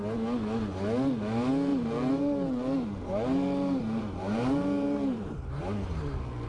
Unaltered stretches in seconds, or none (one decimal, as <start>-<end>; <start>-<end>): 0.0-1.7; 5.6-6.5